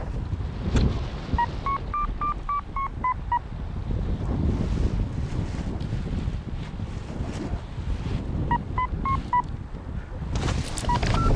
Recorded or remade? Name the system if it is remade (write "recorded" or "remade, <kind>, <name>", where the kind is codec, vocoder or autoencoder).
recorded